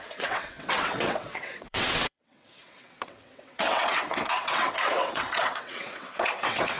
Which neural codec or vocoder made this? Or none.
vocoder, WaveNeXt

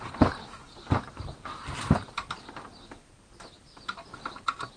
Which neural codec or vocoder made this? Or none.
none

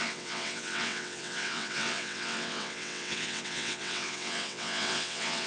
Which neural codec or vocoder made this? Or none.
vocoder, WaveNeXt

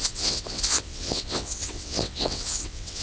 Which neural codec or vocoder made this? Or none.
vocoder, WaveNeXt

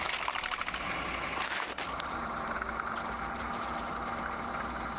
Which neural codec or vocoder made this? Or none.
none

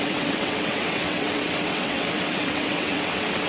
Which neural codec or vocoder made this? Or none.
vocoder, WaveNeXt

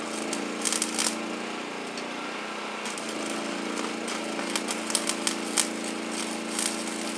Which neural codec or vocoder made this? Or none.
none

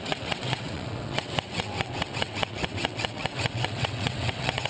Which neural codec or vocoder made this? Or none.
vocoder, WaveNeXt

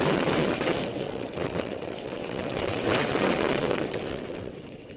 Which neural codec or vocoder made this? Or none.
vocoder, WaveNeXt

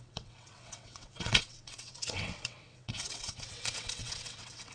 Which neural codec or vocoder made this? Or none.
vocoder, WaveNeXt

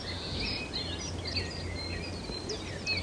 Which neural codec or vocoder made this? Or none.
none